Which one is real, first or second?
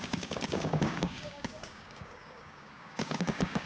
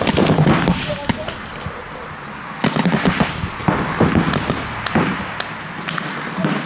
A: second